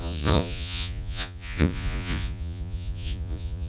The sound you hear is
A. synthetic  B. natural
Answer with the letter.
A